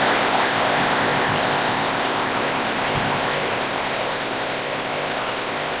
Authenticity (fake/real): fake